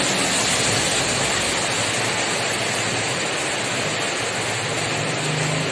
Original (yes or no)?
yes